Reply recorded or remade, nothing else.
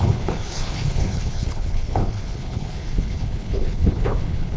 remade